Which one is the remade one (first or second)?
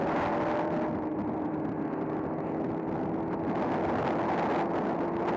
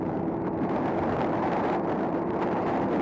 second